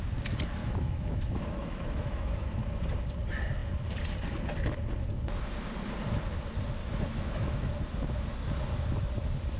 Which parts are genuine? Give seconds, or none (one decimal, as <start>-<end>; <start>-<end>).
0.0-0.6; 2.6-6.8; 7.7-9.6

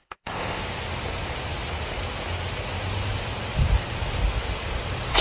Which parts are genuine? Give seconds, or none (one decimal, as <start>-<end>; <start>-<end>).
0.6-5.2

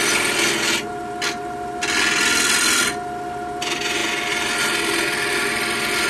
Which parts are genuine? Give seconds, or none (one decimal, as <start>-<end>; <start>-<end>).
0.0-6.1